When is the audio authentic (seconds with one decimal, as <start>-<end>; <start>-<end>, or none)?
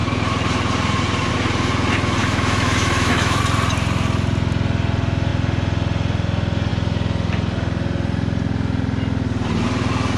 0.0-2.2; 3.4-10.2